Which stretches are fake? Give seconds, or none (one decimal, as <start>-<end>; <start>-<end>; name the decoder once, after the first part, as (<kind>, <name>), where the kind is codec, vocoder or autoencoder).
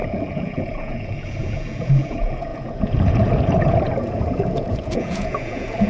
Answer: 0.0-5.9 (vocoder, Vocos)